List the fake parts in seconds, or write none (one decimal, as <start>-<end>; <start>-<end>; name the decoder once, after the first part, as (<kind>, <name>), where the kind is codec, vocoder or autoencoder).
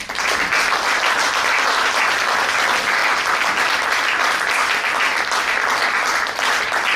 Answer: none